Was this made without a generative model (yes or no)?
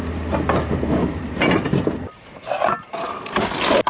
yes